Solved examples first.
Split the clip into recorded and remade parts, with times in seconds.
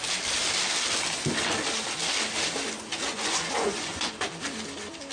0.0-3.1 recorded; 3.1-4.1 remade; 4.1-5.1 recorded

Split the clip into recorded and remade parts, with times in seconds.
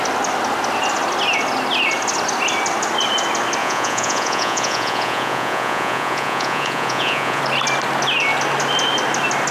0.0-3.6 recorded; 3.6-7.4 remade; 7.4-9.5 recorded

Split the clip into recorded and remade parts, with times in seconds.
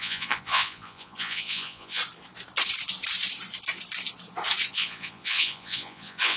0.0-2.0 remade; 2.0-4.7 recorded; 4.7-6.4 remade